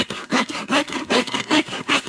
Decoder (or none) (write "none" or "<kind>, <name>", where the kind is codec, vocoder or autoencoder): codec, SNAC